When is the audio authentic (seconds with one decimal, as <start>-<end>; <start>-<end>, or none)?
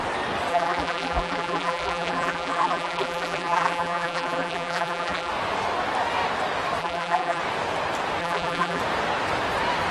0.0-0.5; 5.3-6.8; 7.4-8.2; 8.8-9.9